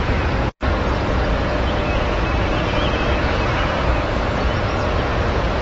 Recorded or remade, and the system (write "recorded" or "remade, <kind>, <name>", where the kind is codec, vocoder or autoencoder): remade, vocoder, Vocos